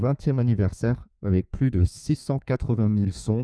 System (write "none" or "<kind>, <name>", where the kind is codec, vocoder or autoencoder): codec, SNAC